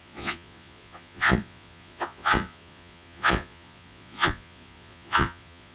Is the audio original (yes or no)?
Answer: no